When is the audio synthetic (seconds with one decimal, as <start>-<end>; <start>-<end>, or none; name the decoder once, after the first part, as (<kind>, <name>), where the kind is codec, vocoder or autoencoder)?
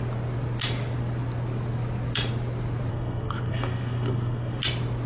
2.9-4.6 (codec, SNAC)